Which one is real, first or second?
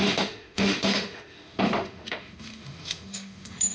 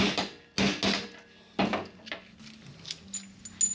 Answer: second